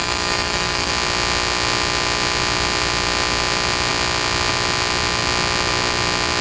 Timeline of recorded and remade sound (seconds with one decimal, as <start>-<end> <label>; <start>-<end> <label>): 0.0-0.9 remade; 0.9-6.4 recorded